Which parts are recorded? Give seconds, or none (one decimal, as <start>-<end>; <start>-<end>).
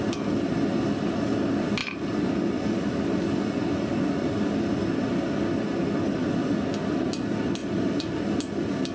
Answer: 0.0-7.6; 8.2-8.9